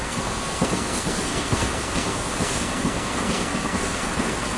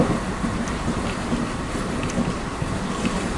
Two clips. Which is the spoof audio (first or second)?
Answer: first